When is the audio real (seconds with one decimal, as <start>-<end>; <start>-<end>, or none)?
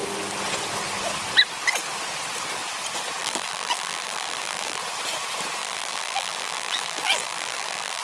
0.0-3.2; 4.8-5.6